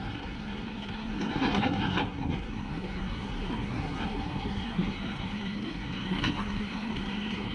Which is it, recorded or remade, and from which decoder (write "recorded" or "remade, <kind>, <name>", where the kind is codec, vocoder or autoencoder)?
remade, codec, SNAC